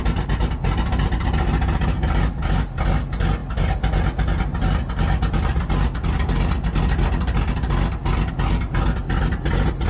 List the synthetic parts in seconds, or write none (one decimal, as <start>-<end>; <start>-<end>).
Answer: none